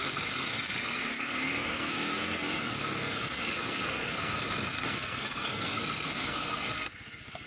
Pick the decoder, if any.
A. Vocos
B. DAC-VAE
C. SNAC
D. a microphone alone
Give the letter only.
C